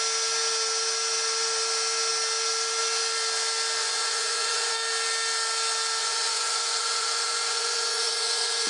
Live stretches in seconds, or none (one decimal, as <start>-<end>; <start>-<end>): 0.0-3.8; 4.7-6.0